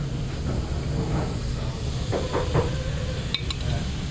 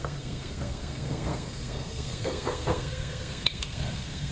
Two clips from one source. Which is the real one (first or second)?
first